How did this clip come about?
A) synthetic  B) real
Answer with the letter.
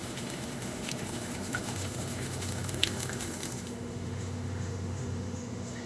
A